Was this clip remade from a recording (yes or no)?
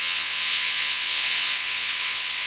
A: yes